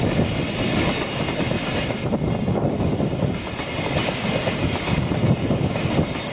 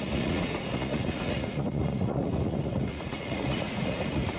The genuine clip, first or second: first